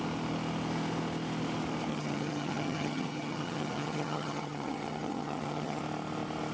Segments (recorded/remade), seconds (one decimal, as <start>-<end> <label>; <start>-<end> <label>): 0.0-1.9 recorded; 1.9-5.8 remade; 5.8-6.5 recorded